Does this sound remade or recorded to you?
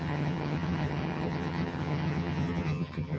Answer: remade